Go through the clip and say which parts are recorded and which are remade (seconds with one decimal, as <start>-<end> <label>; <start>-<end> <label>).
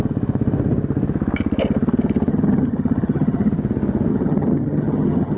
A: 0.0-2.3 recorded; 2.3-3.5 remade; 3.5-4.1 recorded; 4.1-5.4 remade